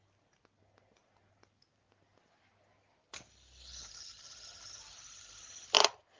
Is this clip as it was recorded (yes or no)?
yes